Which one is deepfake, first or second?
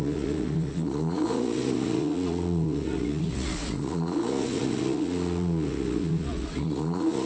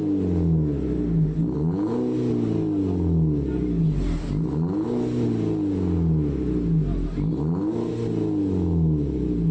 first